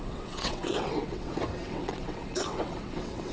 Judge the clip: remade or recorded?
remade